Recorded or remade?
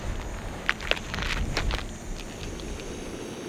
recorded